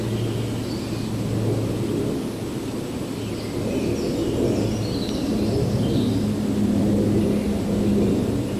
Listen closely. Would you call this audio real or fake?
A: real